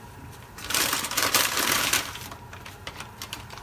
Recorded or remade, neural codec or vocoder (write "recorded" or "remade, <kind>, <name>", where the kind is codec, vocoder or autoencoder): remade, vocoder, BigVGAN v2